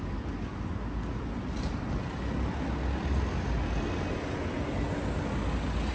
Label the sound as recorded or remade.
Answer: recorded